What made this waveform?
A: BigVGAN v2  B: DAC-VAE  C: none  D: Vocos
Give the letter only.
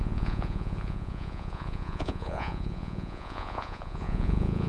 D